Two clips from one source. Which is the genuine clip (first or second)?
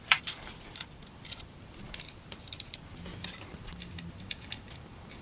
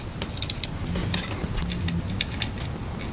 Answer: second